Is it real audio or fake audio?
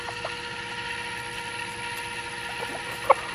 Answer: real